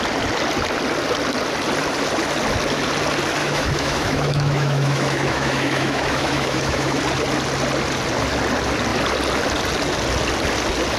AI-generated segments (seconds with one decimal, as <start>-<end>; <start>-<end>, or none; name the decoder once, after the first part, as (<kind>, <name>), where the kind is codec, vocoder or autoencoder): 3.4-7.0 (autoencoder, DAC-VAE)